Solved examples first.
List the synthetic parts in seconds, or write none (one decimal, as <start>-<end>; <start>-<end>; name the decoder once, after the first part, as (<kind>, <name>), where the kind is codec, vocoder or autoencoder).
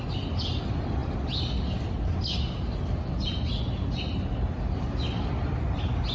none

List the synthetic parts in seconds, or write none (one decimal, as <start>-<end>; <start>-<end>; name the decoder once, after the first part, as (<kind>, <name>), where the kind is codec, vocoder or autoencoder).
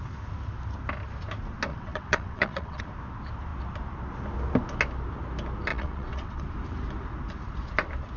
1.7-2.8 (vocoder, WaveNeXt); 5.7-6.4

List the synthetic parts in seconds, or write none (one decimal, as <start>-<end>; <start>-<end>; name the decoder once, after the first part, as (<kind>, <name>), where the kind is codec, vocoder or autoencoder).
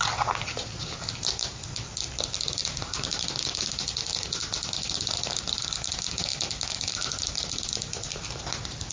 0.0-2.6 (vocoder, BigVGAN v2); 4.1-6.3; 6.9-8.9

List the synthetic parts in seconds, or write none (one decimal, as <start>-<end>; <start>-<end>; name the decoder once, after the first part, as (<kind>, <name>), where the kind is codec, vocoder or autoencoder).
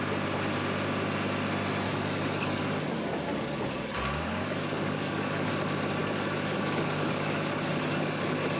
1.9-2.6 (codec, DAC); 3.3-5.5; 6.0-8.6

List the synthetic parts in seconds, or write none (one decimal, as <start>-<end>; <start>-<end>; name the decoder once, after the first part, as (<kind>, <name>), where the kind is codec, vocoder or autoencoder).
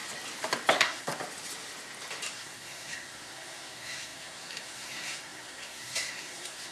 0.7-1.1 (codec, SNAC); 2.3-6.7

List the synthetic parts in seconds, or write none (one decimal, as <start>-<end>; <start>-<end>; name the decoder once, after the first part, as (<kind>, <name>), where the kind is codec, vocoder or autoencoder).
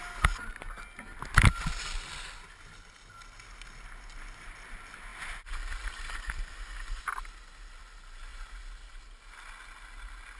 none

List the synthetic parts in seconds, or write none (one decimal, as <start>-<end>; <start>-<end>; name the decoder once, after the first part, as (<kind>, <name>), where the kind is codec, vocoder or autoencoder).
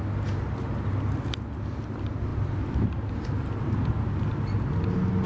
none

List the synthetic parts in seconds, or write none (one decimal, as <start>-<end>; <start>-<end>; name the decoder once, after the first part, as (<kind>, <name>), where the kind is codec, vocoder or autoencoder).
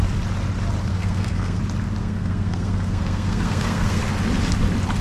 0.9-1.6 (codec, SNAC); 2.0-4.0